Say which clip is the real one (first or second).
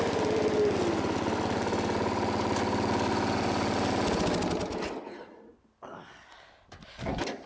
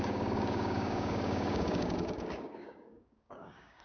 first